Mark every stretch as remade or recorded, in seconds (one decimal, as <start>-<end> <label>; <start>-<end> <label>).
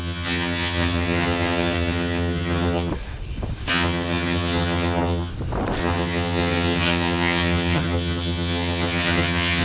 0.0-2.9 remade; 2.9-3.7 recorded; 3.7-5.3 remade; 5.3-5.8 recorded; 5.8-9.6 remade